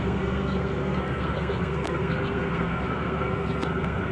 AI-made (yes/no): yes